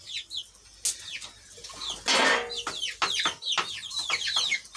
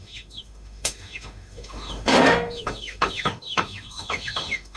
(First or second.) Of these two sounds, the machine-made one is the second